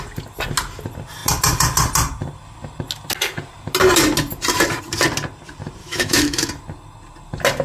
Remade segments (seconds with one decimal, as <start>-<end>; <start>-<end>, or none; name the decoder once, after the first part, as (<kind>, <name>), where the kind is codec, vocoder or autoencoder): 5.8-6.5 (autoencoder, DAC-VAE)